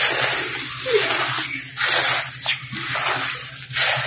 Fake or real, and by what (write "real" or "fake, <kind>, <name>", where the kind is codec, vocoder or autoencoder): real